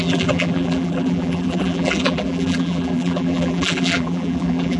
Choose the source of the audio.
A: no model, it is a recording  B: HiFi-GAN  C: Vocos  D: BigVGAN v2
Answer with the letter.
D